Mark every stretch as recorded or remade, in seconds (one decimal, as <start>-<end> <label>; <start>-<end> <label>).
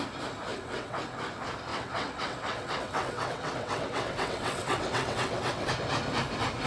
0.0-0.5 recorded; 0.5-1.0 remade; 1.0-1.7 recorded; 1.7-5.7 remade; 5.7-6.7 recorded